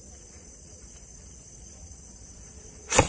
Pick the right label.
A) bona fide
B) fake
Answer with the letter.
B